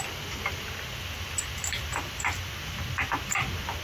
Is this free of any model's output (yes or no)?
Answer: yes